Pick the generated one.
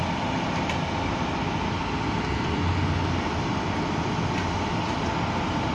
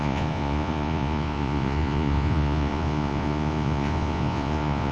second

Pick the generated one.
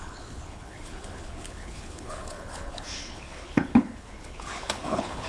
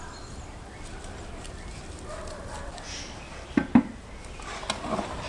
first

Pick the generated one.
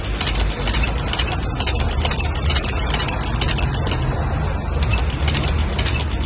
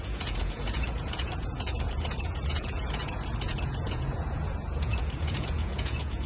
second